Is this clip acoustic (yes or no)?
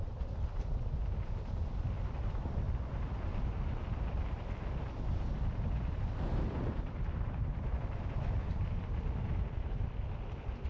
no